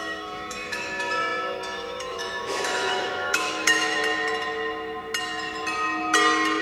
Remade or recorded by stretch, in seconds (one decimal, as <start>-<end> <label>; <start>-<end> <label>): 0.0-4.0 remade; 4.0-6.6 recorded